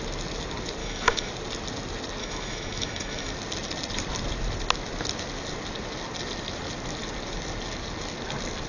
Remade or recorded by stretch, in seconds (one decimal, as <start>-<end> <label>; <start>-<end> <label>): 0.0-0.8 recorded; 0.8-1.3 remade; 1.3-2.2 recorded; 2.2-3.3 remade; 3.3-8.7 recorded